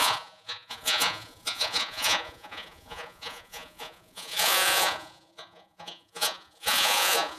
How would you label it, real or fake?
fake